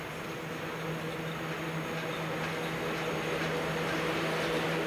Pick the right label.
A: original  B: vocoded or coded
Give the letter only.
A